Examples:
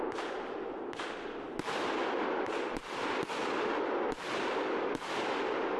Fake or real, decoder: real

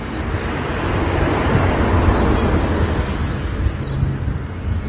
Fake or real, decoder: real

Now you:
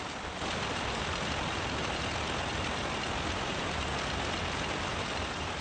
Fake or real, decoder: real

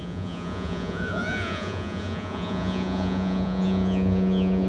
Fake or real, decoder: fake, vocoder, Vocos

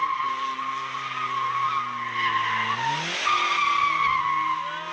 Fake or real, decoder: real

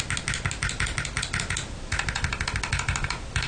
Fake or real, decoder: real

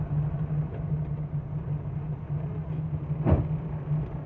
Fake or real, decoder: real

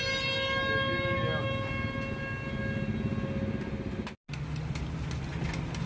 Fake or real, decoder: real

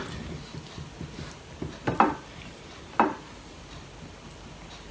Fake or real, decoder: real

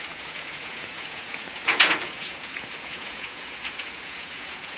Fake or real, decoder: fake, vocoder, Vocos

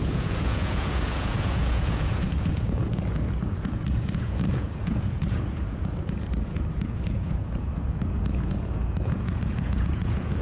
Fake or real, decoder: fake, vocoder, Vocos